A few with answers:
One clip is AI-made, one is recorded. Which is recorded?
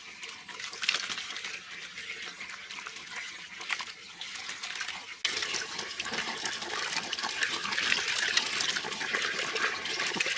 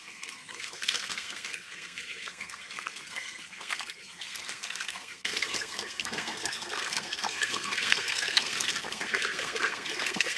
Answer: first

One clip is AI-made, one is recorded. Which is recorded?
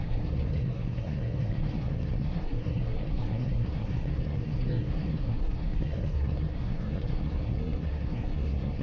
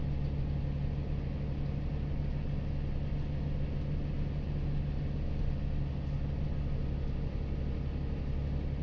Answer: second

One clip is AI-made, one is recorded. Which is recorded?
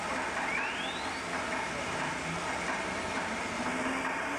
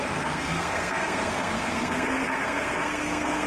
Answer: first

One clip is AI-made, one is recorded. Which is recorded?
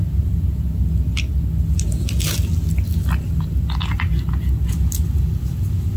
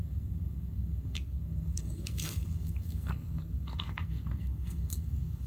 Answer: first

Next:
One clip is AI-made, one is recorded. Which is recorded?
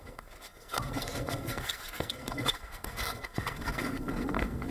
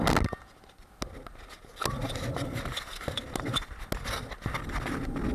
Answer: second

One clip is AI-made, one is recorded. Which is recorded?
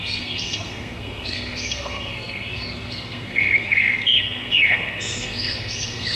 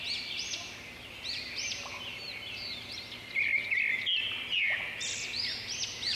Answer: second